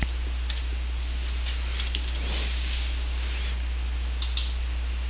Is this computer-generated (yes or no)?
no